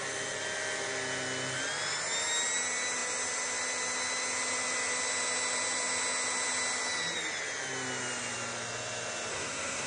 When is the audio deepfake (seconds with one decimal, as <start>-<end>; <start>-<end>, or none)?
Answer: 9.3-9.9